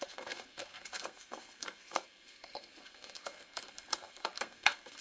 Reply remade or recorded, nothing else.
remade